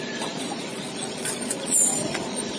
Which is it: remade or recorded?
remade